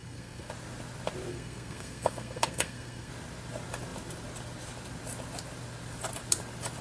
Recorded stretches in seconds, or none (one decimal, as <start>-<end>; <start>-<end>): 0.5-1.3; 3.1-6.8